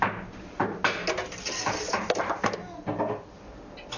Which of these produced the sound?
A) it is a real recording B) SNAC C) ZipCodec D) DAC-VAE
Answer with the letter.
A